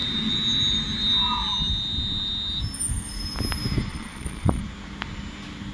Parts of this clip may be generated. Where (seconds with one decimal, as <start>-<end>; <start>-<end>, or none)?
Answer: 3.9-4.6